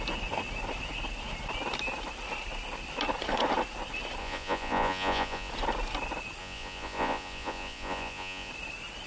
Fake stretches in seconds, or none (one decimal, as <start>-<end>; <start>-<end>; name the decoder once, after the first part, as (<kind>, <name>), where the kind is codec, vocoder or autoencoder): 4.2-5.5 (vocoder, Vocos); 6.4-8.5